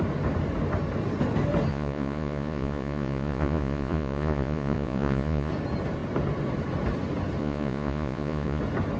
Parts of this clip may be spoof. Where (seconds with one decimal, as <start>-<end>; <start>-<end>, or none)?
1.7-5.5; 7.4-8.6